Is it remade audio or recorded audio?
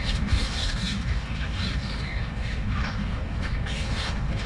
remade